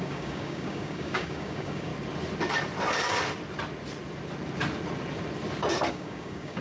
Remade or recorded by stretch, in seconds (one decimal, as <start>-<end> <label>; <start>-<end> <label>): 0.0-1.9 remade; 1.9-5.9 recorded; 5.9-6.6 remade